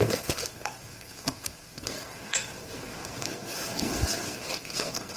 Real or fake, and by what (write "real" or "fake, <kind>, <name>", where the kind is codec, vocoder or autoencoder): fake, codec, SNAC